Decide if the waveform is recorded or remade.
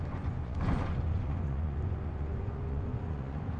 remade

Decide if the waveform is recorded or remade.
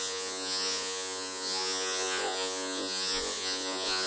remade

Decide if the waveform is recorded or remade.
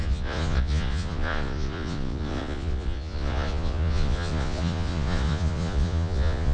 remade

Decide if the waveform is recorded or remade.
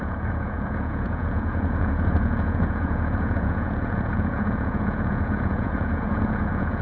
remade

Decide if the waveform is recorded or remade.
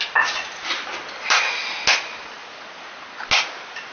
recorded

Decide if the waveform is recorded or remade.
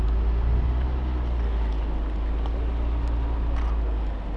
recorded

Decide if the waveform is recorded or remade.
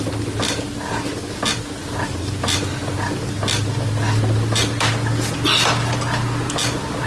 recorded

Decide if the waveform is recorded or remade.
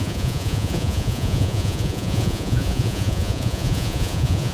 remade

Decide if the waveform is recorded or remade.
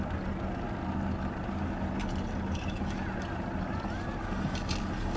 recorded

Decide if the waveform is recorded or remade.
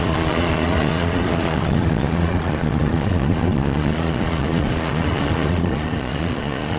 remade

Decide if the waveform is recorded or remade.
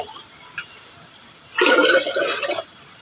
recorded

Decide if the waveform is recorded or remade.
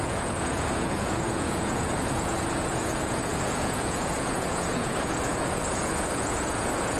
remade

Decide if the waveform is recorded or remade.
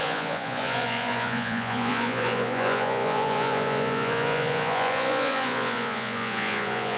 remade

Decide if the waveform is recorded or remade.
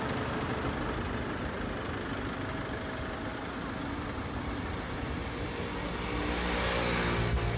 recorded